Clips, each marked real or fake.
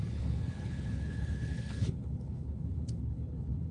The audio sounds fake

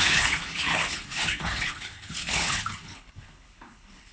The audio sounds fake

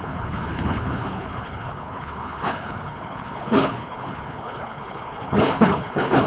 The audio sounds fake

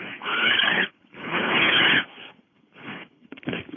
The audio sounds fake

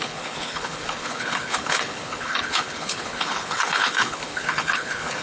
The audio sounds fake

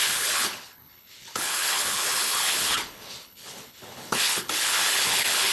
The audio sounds fake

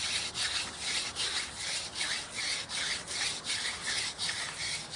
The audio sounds real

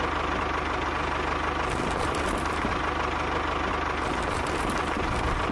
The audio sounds real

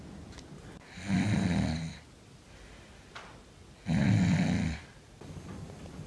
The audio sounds real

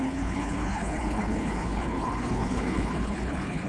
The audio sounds fake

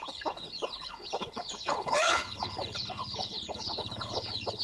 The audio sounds fake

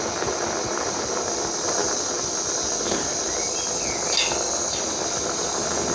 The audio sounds real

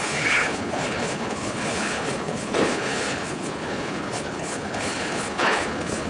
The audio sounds fake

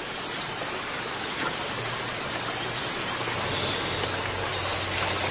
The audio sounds real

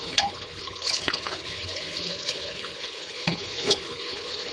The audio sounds fake